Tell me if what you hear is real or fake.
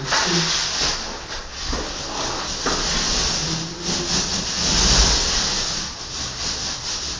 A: real